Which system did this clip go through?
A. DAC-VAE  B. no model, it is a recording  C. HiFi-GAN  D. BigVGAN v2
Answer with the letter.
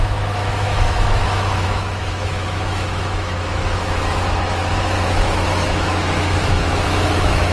A